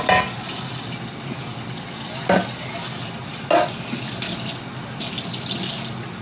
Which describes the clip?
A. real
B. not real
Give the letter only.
A